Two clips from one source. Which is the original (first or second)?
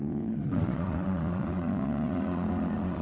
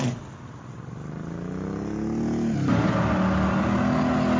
second